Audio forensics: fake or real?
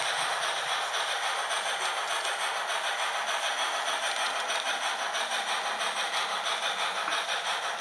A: real